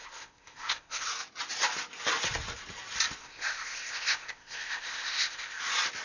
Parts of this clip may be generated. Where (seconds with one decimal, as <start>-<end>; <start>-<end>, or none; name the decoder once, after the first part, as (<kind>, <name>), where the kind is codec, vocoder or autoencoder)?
0.0-1.1 (codec, ZipCodec); 3.2-5.6